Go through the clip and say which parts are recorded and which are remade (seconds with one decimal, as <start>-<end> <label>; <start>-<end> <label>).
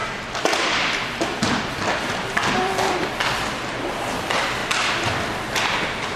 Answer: 0.0-4.6 remade; 4.6-6.2 recorded